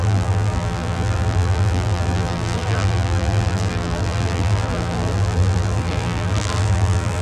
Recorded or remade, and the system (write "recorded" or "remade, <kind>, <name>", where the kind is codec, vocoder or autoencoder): remade, vocoder, BigVGAN v2